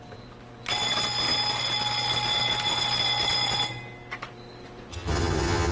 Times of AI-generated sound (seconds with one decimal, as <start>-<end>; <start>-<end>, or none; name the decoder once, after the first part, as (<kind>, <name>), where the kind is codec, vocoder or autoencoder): 4.9-5.7 (vocoder, HiFi-GAN)